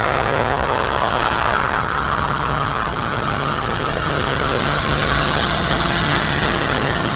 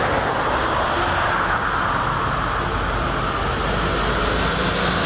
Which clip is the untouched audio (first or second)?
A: second